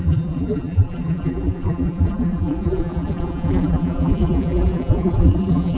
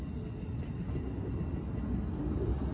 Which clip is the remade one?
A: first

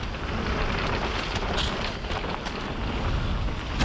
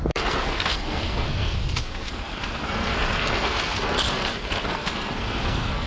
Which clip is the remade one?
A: second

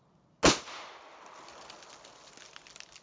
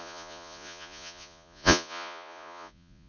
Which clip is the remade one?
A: second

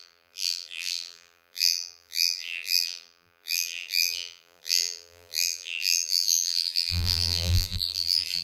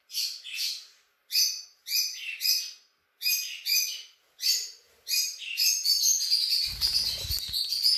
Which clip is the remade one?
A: first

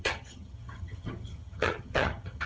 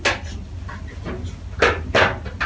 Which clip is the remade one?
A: first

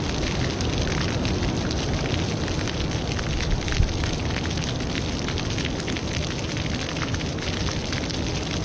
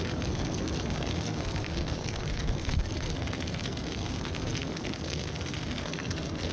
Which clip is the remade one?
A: second